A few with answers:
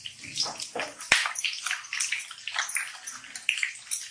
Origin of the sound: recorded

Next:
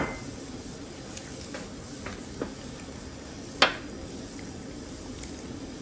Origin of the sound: recorded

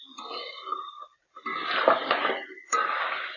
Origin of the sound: recorded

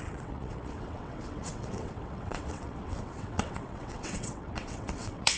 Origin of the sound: remade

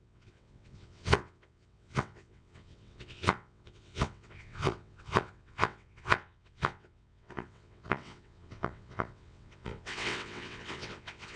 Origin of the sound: remade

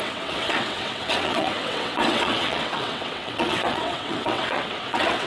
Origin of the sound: remade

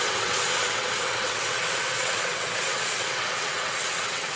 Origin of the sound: remade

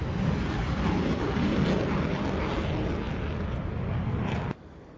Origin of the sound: recorded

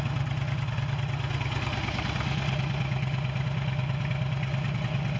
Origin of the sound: recorded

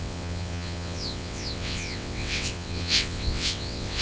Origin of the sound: remade